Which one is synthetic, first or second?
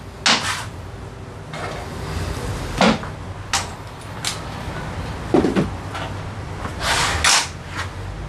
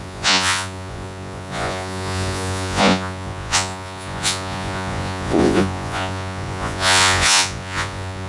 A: second